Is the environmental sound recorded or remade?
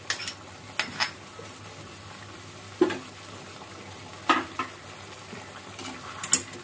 recorded